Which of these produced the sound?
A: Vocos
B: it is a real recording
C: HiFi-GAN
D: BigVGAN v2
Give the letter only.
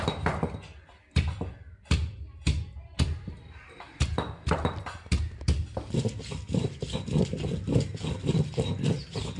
B